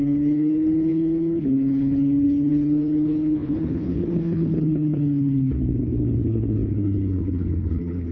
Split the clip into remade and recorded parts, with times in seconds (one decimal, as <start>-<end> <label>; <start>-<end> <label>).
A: 0.0-8.1 remade